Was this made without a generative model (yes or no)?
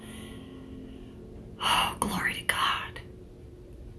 yes